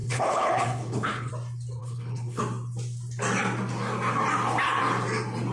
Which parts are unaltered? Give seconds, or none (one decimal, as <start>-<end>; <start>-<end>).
1.3-1.8; 2.4-5.5